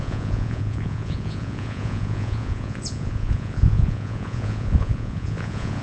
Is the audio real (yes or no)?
no